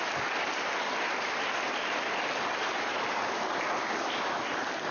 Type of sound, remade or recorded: recorded